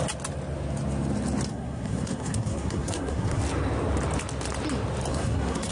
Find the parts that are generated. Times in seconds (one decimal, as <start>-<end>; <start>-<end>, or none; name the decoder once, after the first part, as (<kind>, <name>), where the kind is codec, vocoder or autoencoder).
1.5-3.4 (codec, SNAC); 5.1-5.7